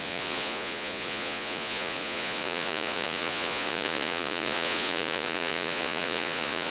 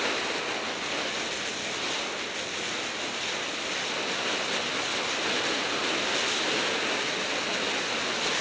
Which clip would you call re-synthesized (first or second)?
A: first